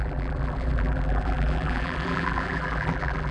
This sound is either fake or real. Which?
fake